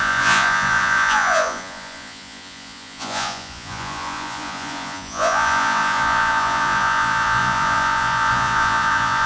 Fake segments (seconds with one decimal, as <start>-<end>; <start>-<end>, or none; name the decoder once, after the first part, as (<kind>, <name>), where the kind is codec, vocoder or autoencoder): 0.0-9.3 (vocoder, Vocos)